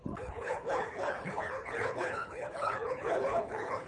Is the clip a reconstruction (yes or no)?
yes